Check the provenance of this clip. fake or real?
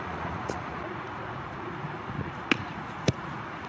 fake